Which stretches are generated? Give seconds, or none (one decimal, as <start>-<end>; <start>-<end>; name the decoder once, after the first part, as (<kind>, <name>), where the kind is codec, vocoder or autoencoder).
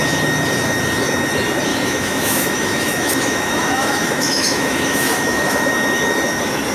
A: 1.7-5.7 (autoencoder, DAC-VAE)